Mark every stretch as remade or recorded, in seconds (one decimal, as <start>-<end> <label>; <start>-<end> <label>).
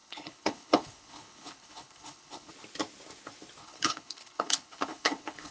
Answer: 0.0-2.5 remade; 2.5-3.6 recorded; 3.6-5.5 remade